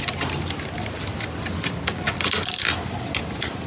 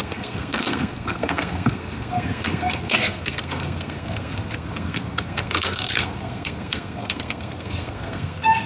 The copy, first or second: second